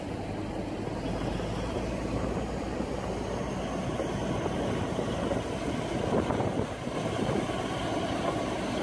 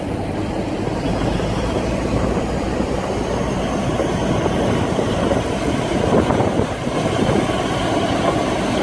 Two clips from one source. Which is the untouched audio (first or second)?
first